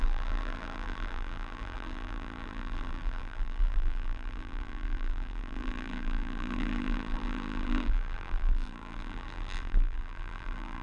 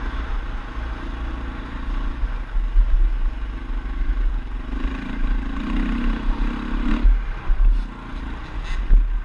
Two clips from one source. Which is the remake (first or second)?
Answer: first